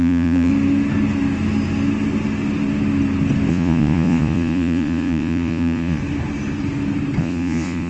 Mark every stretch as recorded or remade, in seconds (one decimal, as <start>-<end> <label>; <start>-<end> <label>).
0.0-0.5 remade; 0.5-3.5 recorded; 3.5-6.0 remade; 6.0-7.2 recorded; 7.2-7.9 remade

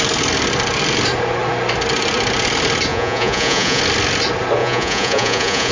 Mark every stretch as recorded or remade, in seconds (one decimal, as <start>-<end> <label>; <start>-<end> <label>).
0.0-2.9 recorded; 2.9-3.8 remade; 3.8-4.6 recorded; 4.6-5.7 remade

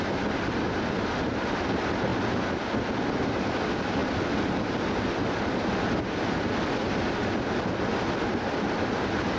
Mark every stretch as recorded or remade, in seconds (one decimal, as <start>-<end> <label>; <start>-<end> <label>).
0.0-9.4 recorded

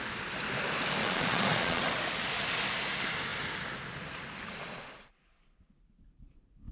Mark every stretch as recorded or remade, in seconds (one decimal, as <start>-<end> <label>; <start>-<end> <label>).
0.0-1.0 recorded; 1.0-1.8 remade; 1.8-6.7 recorded

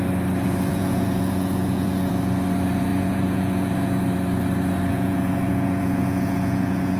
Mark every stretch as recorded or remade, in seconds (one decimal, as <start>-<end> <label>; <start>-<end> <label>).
0.0-0.7 recorded; 0.7-2.1 remade; 2.1-2.9 recorded; 2.9-4.0 remade; 4.0-4.9 recorded; 4.9-7.0 remade

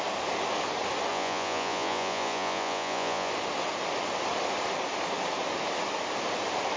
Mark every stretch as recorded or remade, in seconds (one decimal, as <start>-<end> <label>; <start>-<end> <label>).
0.0-1.1 recorded; 1.1-3.3 remade; 3.3-6.8 recorded